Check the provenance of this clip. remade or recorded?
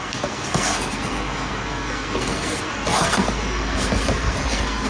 remade